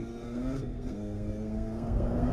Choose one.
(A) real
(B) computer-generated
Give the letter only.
B